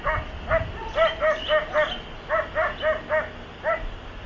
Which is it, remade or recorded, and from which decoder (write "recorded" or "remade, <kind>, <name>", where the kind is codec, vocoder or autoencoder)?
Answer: recorded